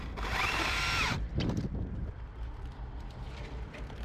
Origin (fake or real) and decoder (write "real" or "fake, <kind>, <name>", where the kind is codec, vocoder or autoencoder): fake, vocoder, BigVGAN v2